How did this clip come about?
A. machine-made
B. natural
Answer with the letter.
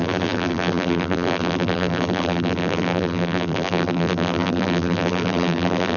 A